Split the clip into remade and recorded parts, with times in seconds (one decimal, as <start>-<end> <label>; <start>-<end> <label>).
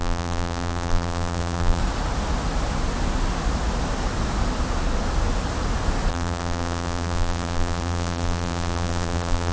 0.0-1.8 remade; 1.8-6.1 recorded; 6.1-9.5 remade